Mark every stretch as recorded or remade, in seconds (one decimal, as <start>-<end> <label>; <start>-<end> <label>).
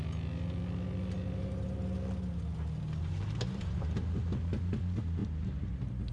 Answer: 0.0-6.1 recorded